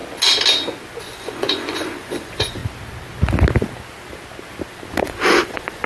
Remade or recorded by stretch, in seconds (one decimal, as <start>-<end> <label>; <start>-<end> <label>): 0.0-1.0 recorded; 1.0-2.6 remade; 2.6-5.0 recorded; 5.0-5.9 remade